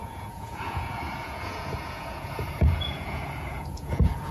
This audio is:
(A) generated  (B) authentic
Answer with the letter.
A